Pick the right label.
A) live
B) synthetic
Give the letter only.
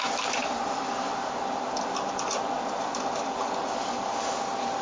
A